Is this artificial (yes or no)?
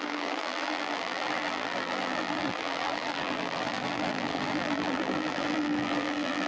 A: yes